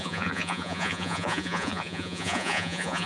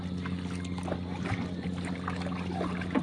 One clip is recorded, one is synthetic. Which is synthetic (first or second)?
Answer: first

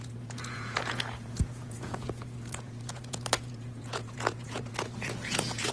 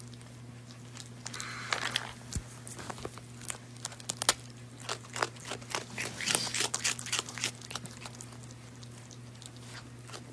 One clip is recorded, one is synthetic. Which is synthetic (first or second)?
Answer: first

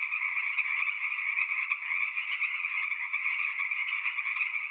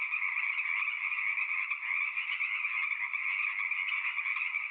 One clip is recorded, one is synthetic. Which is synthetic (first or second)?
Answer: first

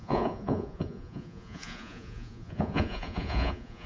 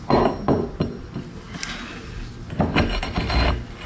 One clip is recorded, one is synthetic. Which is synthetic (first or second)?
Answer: first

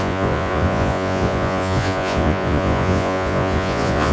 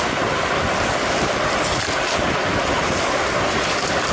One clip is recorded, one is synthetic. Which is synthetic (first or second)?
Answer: first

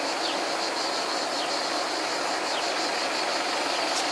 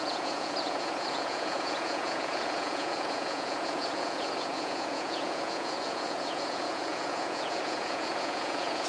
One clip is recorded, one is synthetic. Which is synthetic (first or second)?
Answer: second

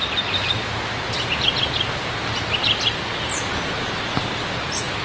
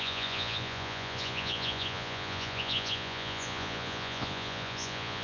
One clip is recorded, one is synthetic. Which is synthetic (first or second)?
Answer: second